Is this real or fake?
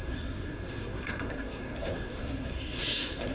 fake